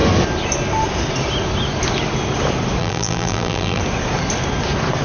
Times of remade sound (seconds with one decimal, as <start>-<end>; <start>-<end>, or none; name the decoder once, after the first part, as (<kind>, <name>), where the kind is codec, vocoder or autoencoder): 2.8-3.8 (vocoder, BigVGAN v2)